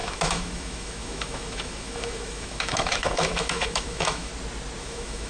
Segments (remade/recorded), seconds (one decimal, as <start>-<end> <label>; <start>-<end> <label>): 0.0-4.3 remade; 4.3-4.8 recorded; 4.8-5.3 remade